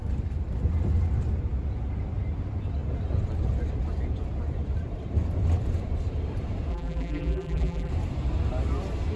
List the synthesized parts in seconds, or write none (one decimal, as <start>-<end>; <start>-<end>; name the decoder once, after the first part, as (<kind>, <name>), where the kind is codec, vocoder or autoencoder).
6.7-7.9 (vocoder, BigVGAN v2)